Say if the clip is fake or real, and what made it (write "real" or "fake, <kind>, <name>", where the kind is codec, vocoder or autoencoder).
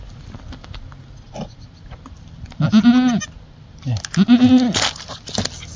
real